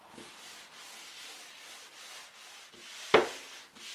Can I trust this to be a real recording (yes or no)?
yes